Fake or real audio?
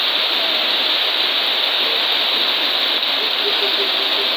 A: real